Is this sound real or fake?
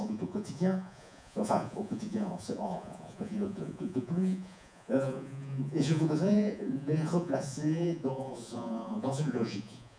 fake